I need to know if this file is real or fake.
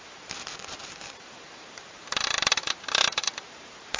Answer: fake